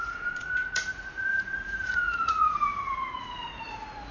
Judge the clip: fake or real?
fake